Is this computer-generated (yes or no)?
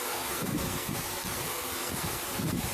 yes